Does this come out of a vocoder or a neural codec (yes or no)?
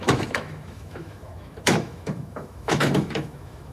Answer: yes